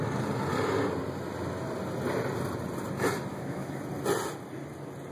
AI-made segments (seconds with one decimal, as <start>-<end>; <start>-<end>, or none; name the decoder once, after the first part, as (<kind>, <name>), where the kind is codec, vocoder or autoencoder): 3.3-3.8 (autoencoder, DAC-VAE)